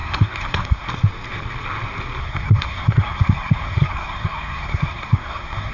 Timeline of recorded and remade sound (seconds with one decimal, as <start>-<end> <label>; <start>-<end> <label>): 0.0-0.9 remade; 0.9-2.2 recorded; 2.2-5.7 remade

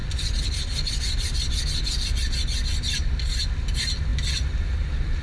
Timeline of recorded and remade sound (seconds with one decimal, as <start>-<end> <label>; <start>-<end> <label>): 0.0-5.2 recorded

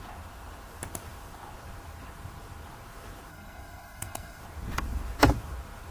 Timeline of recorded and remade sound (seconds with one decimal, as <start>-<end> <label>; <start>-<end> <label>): 0.0-3.3 recorded; 3.3-4.4 remade; 4.4-5.9 recorded

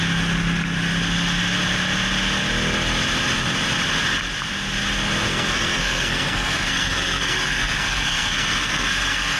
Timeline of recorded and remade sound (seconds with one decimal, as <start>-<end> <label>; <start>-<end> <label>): 0.0-5.3 recorded; 5.3-9.4 remade

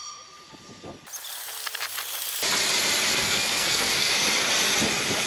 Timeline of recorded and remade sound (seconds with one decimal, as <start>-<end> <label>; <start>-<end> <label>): 0.0-3.1 recorded; 3.1-4.1 remade; 4.1-5.3 recorded

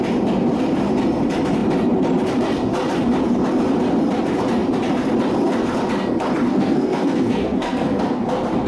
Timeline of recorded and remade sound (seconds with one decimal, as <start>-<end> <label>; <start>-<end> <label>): 0.0-6.5 recorded; 6.5-8.2 remade; 8.2-8.7 recorded

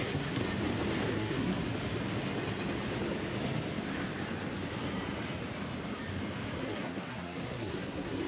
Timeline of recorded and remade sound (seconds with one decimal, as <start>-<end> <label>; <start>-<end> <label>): 0.0-0.4 remade; 0.4-1.1 recorded; 1.1-1.6 remade; 1.6-6.6 recorded; 6.6-8.3 remade